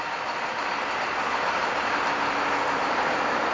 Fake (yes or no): no